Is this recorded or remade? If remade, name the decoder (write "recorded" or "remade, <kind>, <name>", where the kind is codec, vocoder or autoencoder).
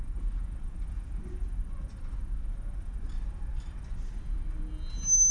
recorded